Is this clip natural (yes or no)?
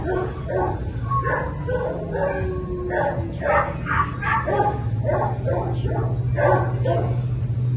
yes